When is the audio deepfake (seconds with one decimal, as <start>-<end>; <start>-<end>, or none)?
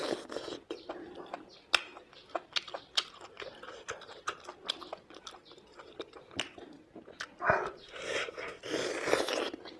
7.8-8.6